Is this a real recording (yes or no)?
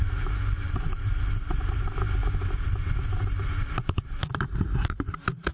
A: no